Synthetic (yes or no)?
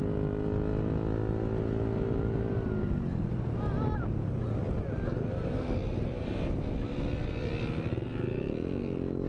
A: no